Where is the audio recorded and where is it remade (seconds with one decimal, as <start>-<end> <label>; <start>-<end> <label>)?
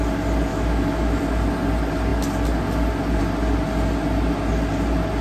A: 0.0-0.5 recorded; 0.5-1.2 remade; 1.2-5.2 recorded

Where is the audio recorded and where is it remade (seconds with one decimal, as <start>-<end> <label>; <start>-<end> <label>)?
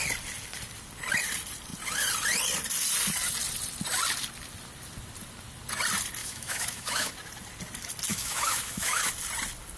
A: 0.0-6.2 recorded; 6.2-7.1 remade; 7.1-8.1 recorded; 8.1-9.1 remade; 9.1-9.8 recorded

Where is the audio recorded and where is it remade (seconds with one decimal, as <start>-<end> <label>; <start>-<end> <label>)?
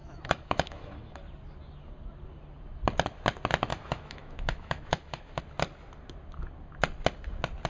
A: 0.0-1.2 remade; 1.2-3.7 recorded; 3.7-5.4 remade; 5.4-7.7 recorded